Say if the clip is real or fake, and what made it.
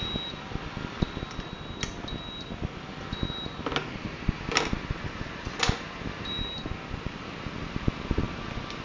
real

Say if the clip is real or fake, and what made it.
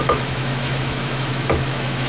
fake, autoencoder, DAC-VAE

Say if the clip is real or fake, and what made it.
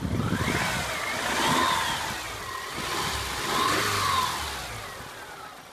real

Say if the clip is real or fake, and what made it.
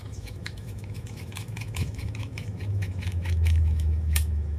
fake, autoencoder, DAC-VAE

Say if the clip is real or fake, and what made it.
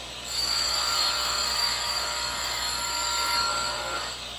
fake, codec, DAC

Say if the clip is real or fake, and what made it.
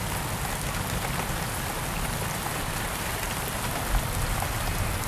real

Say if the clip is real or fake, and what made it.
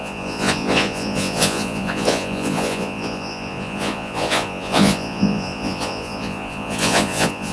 fake, vocoder, Vocos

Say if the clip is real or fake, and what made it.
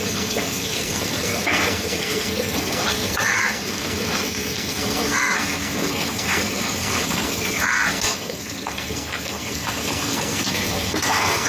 fake, codec, SNAC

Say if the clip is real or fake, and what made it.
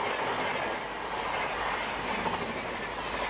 real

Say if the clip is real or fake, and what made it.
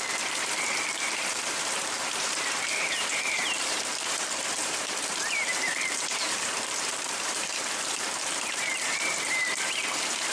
fake, vocoder, BigVGAN v2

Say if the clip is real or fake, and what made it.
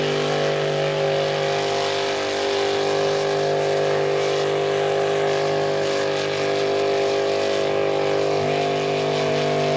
real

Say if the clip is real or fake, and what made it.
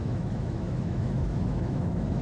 fake, autoencoder, DAC-VAE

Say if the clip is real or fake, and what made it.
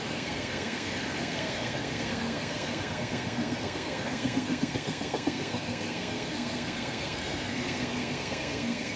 fake, codec, SNAC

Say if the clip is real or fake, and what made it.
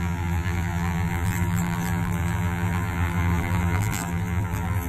fake, vocoder, BigVGAN v2